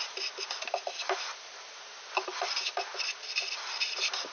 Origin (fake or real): real